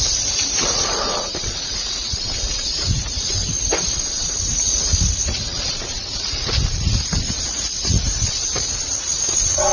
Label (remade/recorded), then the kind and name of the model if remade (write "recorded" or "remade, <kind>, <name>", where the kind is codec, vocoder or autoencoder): remade, vocoder, Vocos